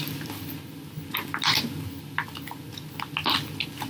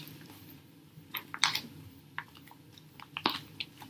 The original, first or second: first